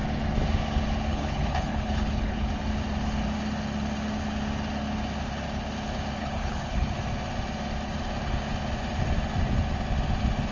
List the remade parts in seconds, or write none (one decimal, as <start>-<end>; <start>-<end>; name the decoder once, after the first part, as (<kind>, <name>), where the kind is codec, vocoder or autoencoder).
1.1-2.5 (codec, HILCodec); 6.2-7.0